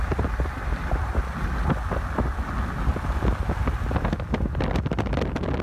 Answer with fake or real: real